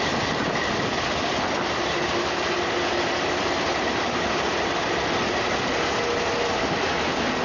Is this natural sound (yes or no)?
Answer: yes